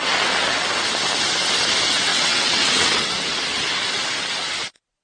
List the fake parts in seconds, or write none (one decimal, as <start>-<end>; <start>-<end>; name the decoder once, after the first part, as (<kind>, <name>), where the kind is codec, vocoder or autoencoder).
2.1-3.1 (vocoder, WaveNeXt)